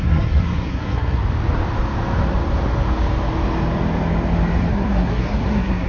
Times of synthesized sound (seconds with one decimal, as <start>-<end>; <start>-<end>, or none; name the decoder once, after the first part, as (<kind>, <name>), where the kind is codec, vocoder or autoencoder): 0.0-1.2 (codec, SNAC); 4.7-5.9